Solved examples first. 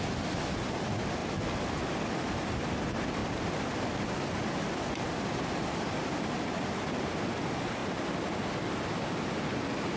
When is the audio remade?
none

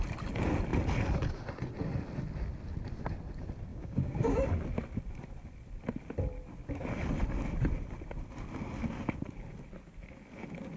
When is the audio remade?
3.7-4.4 (codec, DAC)

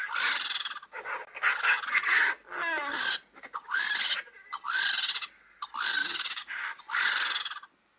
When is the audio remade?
6.0-6.8 (codec, DAC)

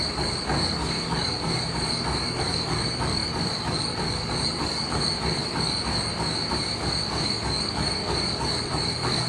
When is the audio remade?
0.0-6.1 (codec, DAC); 6.9-9.3

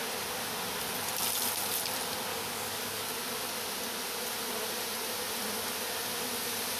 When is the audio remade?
2.3-3.0 (codec, DAC)

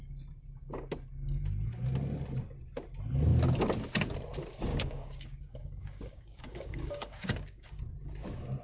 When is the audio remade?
4.7-7.8 (codec, DAC)